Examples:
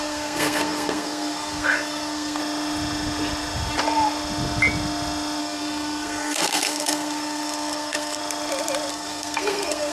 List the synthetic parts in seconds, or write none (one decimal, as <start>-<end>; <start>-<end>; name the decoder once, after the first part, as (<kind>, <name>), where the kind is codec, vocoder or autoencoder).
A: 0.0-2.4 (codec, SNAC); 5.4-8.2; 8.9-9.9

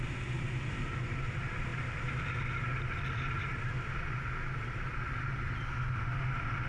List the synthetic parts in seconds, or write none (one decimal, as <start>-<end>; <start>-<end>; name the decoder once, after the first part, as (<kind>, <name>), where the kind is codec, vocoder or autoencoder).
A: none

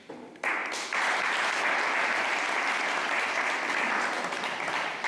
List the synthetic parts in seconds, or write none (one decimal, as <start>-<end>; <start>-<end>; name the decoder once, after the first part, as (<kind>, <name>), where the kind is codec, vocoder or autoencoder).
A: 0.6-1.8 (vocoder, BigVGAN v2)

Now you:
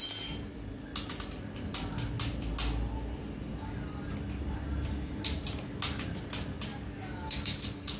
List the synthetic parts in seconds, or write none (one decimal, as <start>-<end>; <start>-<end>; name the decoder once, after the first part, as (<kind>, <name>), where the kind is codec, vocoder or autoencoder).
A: 6.7-8.0 (codec, DAC)

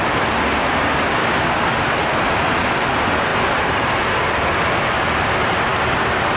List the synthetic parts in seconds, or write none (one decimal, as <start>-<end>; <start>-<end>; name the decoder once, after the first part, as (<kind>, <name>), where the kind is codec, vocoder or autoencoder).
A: 1.2-1.7 (codec, DAC)

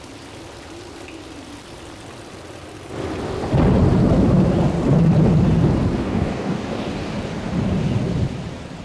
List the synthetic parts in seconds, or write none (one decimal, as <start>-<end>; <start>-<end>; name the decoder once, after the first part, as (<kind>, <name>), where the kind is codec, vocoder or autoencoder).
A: 6.0-6.9 (codec, DAC)